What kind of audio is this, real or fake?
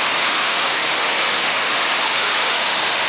fake